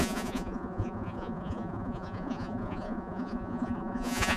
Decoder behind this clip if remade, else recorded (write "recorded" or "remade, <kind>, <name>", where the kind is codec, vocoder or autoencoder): remade, vocoder, Vocos